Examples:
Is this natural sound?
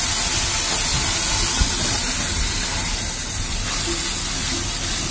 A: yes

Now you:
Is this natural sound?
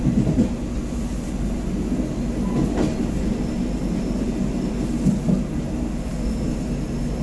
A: yes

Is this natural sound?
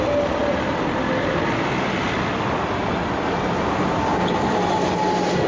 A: yes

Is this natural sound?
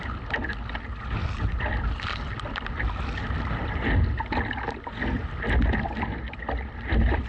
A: yes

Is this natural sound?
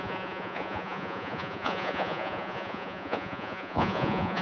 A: no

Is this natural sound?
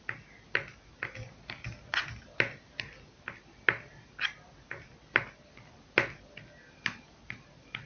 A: yes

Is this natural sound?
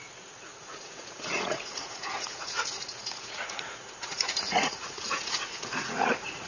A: no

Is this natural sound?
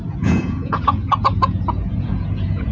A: no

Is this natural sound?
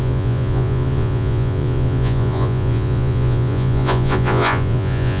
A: no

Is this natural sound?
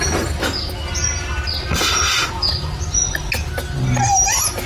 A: yes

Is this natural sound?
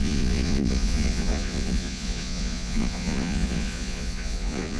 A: no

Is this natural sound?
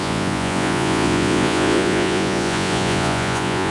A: no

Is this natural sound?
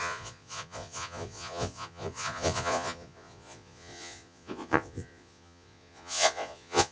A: no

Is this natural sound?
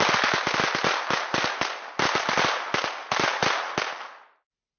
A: yes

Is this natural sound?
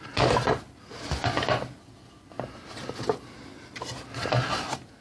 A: yes